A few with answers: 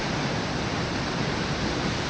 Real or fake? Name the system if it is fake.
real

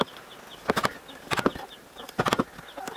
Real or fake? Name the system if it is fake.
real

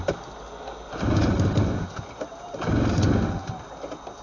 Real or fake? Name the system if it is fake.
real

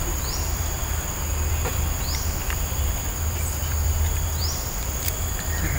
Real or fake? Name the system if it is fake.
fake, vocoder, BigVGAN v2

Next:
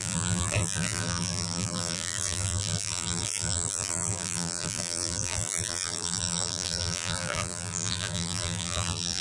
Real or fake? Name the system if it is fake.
fake, vocoder, BigVGAN v2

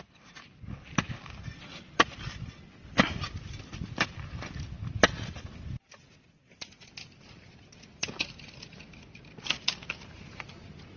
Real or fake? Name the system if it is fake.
real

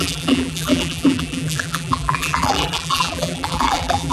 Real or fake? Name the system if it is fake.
fake, vocoder, BigVGAN v2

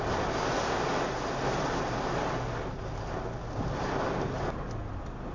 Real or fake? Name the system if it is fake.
real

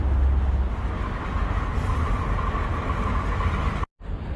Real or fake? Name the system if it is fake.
real